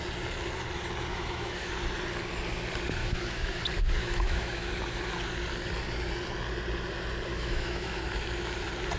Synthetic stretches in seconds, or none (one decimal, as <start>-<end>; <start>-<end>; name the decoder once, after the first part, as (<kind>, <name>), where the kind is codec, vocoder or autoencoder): 1.1-1.7 (autoencoder, DAC-VAE); 3.0-3.6; 4.0-4.7; 7.3-8.0